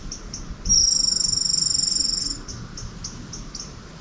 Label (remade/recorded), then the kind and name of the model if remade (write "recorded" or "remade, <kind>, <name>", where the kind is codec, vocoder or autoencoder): recorded